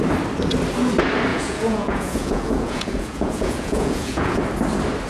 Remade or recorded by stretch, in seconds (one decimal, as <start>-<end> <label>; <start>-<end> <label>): 0.0-1.3 recorded; 1.3-4.4 remade; 4.4-5.1 recorded